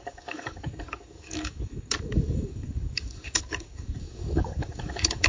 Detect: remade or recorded remade